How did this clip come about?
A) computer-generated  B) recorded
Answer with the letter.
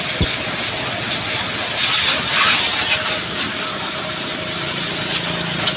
B